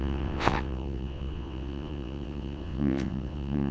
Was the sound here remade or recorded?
remade